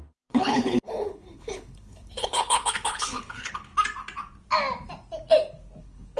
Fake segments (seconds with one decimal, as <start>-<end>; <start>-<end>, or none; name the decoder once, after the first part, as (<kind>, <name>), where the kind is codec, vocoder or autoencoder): 0.0-3.7 (codec, HILCodec); 5.8-6.2